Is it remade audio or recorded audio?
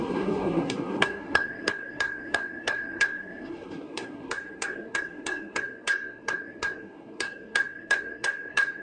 remade